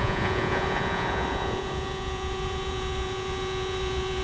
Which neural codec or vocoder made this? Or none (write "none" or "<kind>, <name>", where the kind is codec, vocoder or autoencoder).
vocoder, Vocos